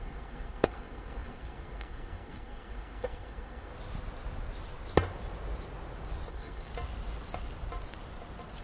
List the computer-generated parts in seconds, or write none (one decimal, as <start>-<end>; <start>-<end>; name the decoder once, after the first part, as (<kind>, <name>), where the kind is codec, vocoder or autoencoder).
0.0-3.7 (codec, SNAC); 6.3-6.7